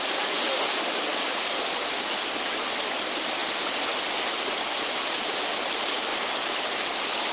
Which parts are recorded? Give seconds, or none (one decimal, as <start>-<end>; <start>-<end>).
0.0-7.3